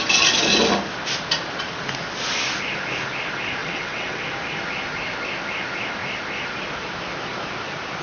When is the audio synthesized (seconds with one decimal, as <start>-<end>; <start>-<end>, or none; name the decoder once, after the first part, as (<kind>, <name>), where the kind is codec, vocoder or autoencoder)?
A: 3.6-4.2 (vocoder, WaveNeXt)